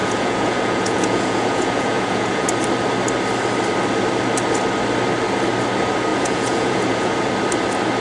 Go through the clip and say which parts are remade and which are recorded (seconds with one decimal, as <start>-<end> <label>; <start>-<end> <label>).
0.0-2.5 remade; 2.5-6.1 recorded; 6.1-7.3 remade; 7.3-8.0 recorded